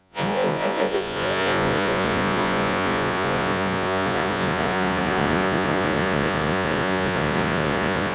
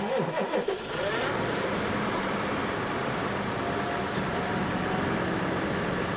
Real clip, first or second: second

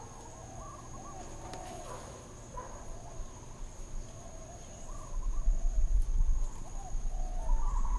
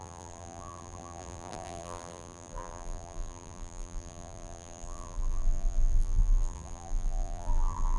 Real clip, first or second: first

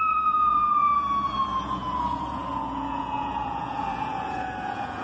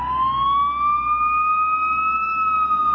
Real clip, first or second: second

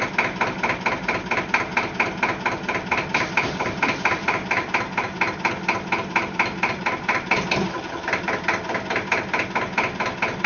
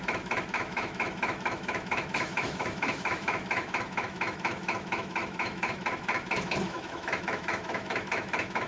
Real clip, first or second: first